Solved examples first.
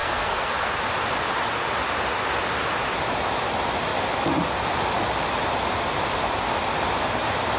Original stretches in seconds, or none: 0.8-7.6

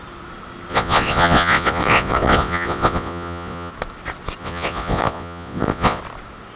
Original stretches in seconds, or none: 0.0-0.7; 3.7-4.4; 6.0-6.6